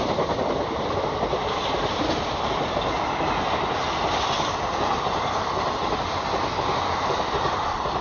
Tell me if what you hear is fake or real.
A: real